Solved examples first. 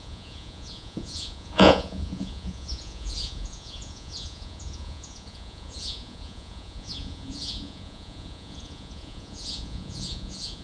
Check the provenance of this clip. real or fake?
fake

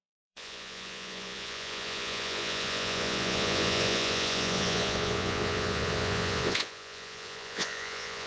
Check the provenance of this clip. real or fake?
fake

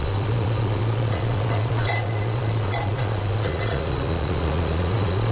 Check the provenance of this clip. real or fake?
fake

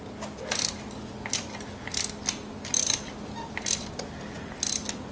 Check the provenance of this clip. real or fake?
real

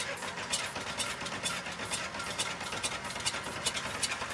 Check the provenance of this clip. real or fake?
real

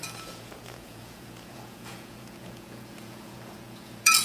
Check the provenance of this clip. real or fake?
fake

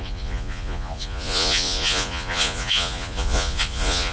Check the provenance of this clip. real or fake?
fake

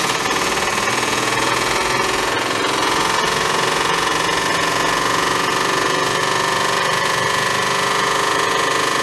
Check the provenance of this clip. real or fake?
fake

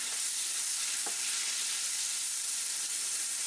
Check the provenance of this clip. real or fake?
real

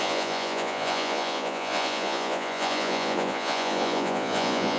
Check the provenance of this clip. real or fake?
fake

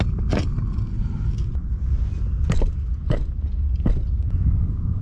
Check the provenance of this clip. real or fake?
real